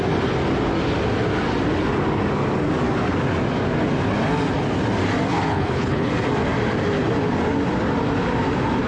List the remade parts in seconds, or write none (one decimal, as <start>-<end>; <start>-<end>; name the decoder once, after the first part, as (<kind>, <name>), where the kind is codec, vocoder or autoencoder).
5.3-6.1 (codec, HILCodec)